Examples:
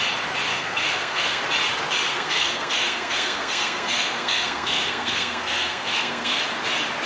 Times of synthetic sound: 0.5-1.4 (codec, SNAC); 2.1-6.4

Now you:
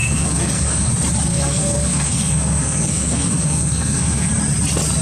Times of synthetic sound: 0.0-0.9 (codec, SNAC); 1.3-4.3

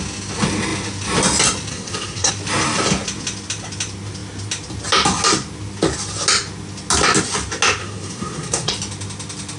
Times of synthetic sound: 1.7-2.3 (codec, SNAC); 7.8-8.7